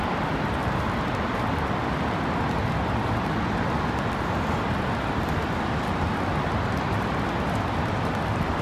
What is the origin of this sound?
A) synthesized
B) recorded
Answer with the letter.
B